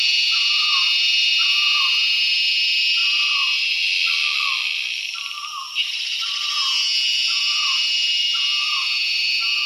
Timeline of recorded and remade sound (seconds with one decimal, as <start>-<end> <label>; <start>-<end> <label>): 0.0-9.7 recorded